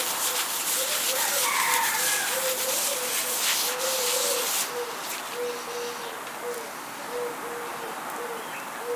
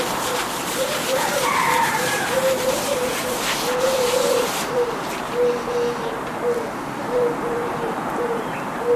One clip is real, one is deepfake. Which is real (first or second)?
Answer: first